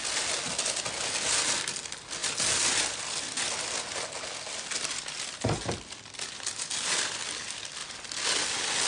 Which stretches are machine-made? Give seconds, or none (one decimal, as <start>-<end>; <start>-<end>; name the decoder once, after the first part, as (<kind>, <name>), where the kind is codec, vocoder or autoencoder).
none